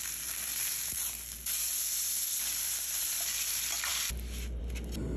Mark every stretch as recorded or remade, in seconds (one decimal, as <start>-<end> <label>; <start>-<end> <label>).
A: 0.0-5.2 recorded